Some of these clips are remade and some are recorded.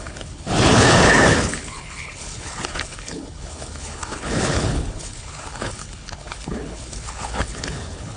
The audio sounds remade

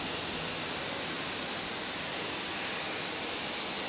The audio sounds recorded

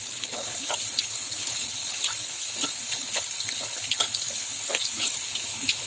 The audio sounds remade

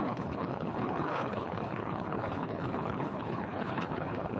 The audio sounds remade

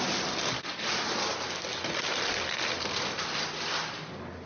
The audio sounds recorded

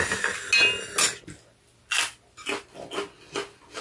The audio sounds recorded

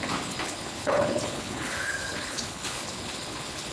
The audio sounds remade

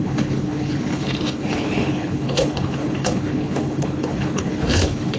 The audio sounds remade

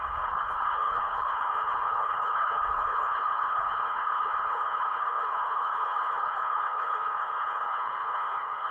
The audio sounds remade